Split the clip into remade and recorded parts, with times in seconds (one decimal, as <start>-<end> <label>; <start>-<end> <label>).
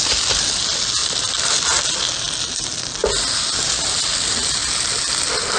0.0-1.0 recorded; 1.0-1.6 remade; 1.6-5.6 recorded